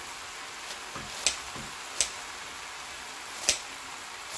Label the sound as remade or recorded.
recorded